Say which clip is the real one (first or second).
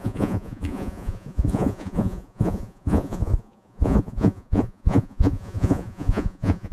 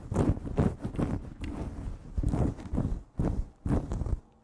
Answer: second